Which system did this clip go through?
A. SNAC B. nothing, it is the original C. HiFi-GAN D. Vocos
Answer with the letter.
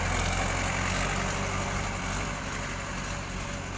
B